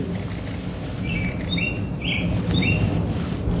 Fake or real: real